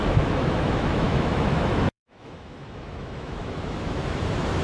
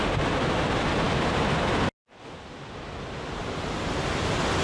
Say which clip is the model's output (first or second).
first